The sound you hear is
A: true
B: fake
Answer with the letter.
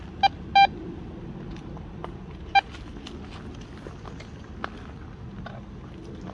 A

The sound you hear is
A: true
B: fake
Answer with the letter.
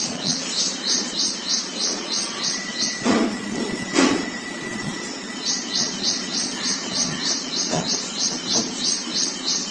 B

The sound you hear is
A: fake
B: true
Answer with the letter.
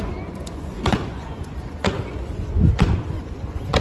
A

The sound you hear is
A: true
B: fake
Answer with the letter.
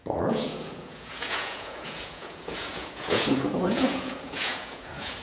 B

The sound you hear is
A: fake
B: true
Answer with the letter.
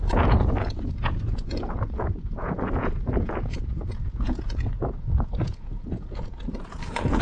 A